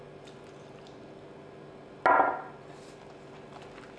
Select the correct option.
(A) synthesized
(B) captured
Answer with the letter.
B